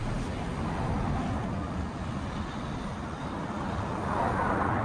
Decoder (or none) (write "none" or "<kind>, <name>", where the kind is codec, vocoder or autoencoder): none